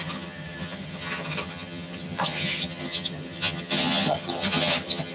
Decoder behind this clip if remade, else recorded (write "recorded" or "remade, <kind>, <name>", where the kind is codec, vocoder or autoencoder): remade, vocoder, HiFi-GAN